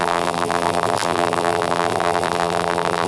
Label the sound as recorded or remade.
remade